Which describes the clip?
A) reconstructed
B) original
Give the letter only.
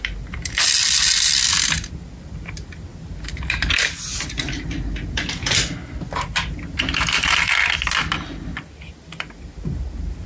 B